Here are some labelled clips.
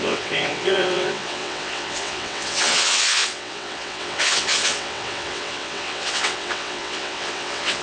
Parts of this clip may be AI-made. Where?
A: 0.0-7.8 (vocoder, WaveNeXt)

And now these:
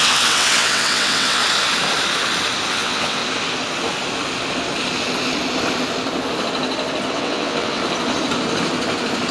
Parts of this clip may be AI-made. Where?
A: 0.0-1.4 (vocoder, WaveNeXt); 2.7-3.2; 7.1-7.8

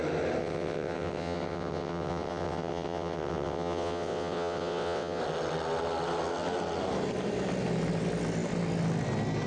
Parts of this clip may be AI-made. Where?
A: 0.4-5.2 (vocoder, WaveNeXt)

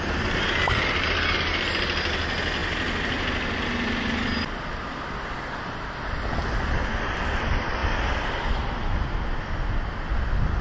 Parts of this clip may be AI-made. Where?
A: none

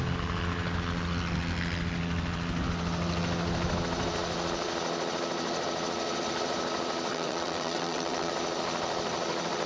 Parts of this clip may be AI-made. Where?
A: 7.1-8.3 (vocoder, WaveNeXt)

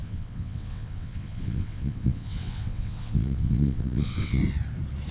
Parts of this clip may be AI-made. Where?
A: 0.0-4.4 (vocoder, WaveNeXt)

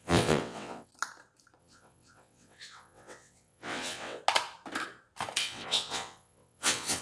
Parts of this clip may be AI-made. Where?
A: 0.0-0.9 (vocoder, WaveNeXt); 1.6-4.2; 5.4-7.0

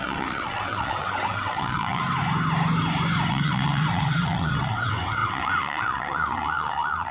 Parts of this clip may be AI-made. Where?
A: 0.0-2.0 (vocoder, WaveNeXt); 3.3-7.1